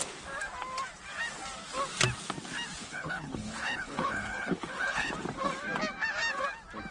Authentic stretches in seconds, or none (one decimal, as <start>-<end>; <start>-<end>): 0.0-2.8; 5.1-6.9